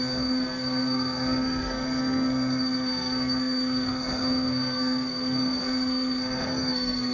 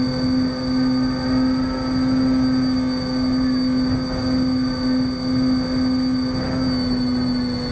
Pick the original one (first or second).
second